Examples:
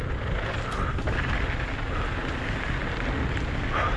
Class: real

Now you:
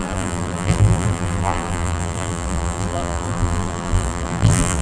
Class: fake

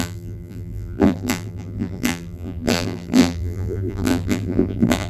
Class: fake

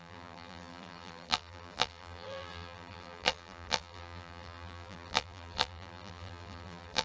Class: fake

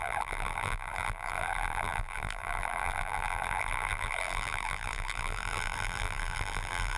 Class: fake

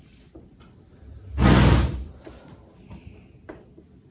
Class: fake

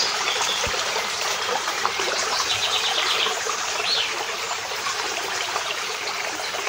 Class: fake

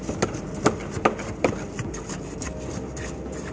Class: real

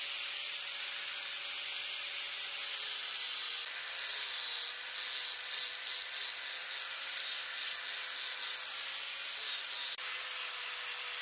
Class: real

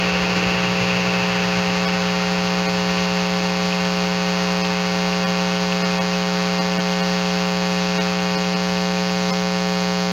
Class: real